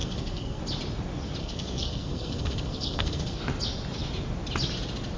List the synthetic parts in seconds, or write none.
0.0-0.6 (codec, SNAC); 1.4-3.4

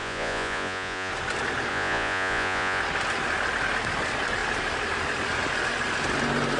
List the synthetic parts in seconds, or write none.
0.0-1.1 (vocoder, Vocos); 1.7-2.8